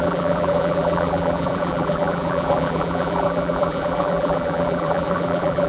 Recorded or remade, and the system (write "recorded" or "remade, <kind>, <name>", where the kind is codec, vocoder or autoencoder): remade, vocoder, BigVGAN v2